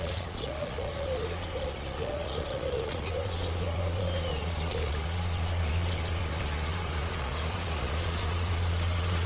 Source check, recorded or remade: remade